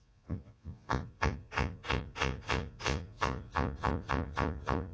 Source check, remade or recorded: remade